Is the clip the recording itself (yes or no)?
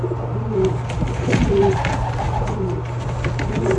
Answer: yes